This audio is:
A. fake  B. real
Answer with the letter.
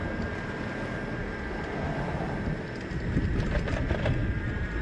B